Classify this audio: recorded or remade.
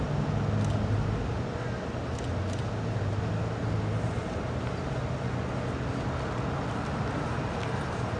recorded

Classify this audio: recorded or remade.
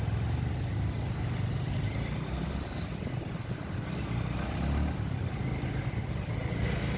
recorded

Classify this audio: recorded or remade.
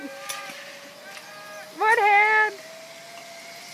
recorded